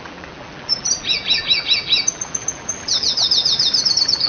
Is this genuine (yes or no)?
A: no